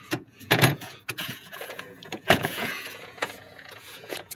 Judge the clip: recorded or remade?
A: remade